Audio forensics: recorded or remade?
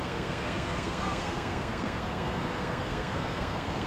remade